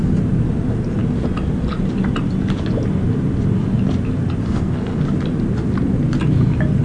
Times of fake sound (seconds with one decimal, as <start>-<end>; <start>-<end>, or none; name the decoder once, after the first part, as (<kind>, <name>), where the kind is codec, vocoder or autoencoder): 4.4-5.0 (codec, SNAC)